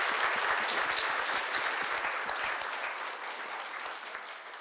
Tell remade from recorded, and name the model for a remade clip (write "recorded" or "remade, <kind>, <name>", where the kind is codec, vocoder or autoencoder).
recorded